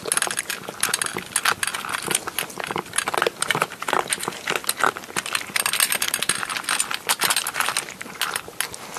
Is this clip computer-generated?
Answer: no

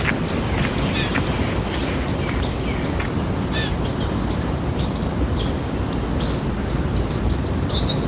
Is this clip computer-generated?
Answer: no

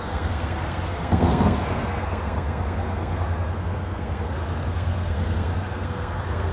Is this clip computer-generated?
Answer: yes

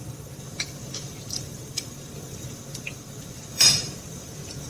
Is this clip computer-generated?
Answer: yes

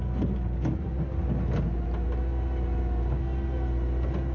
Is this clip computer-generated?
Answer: no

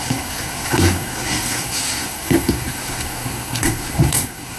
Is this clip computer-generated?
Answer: yes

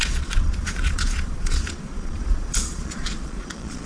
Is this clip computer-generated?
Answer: yes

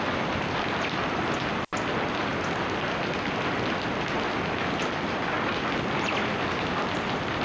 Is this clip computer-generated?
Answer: no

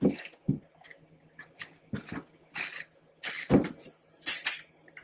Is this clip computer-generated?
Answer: no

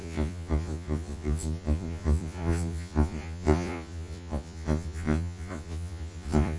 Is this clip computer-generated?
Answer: yes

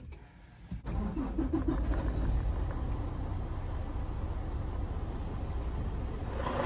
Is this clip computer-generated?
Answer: no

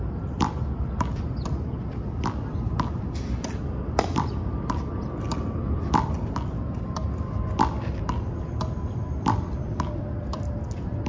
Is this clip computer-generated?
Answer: no